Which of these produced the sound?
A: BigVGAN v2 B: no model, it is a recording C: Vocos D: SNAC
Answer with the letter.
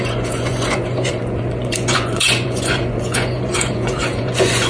C